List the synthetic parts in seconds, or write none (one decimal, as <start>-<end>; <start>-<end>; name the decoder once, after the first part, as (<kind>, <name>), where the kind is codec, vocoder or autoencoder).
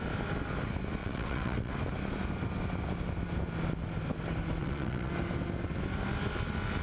1.0-1.7 (vocoder, WaveNeXt); 4.6-5.1